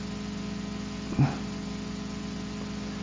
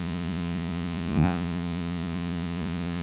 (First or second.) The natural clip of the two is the first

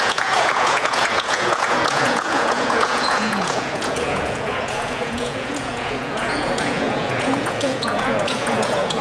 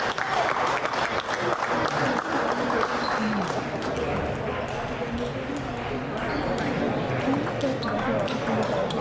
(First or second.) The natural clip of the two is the second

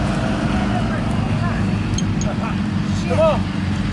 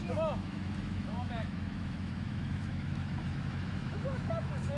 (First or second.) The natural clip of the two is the first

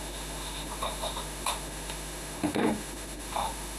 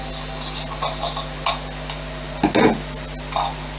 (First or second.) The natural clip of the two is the second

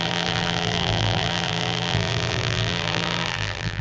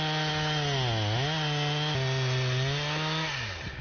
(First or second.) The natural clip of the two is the second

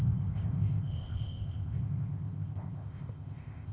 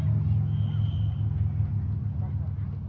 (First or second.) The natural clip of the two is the second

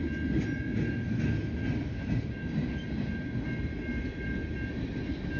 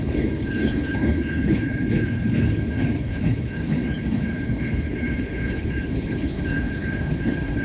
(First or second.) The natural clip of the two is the first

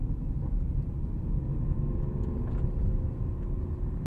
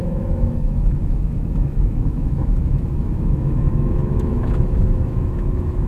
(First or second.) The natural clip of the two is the first